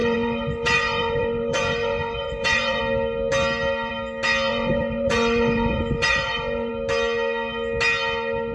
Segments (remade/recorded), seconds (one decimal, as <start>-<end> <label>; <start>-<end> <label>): 0.0-2.8 remade; 2.8-4.5 recorded; 4.5-6.7 remade; 6.7-8.5 recorded